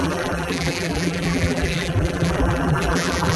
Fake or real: fake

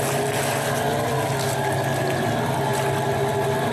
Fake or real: real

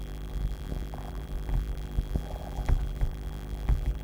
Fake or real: fake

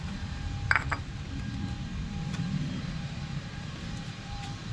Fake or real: fake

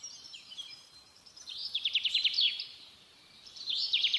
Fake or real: fake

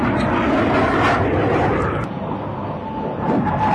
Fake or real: real